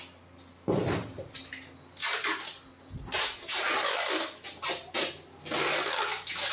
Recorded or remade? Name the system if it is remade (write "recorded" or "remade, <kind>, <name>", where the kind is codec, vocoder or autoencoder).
recorded